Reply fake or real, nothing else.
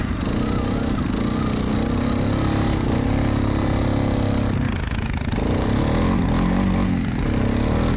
real